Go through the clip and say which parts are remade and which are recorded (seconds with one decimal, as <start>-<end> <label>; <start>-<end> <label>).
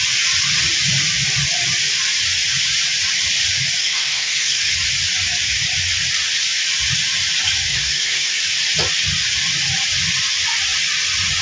0.0-3.8 recorded; 3.8-4.7 remade; 4.7-7.7 recorded; 7.7-8.4 remade; 8.4-11.4 recorded